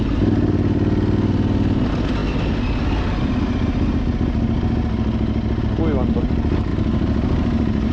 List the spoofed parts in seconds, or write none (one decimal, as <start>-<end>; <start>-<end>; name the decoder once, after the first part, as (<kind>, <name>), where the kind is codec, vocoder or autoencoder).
none